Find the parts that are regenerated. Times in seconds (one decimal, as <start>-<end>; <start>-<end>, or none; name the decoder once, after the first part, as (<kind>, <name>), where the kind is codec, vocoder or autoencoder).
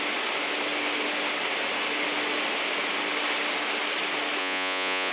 4.4-5.1 (vocoder, Vocos)